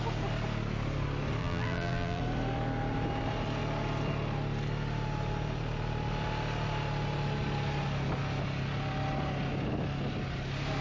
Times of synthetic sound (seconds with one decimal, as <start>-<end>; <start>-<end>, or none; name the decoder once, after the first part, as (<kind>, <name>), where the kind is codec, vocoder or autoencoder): 1.4-2.2 (vocoder, BigVGAN v2)